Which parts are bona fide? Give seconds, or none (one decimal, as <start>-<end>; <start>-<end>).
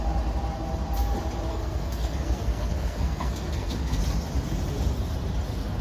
0.0-1.5; 4.0-5.8